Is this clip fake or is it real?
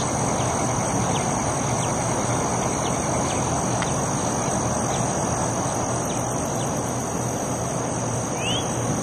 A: real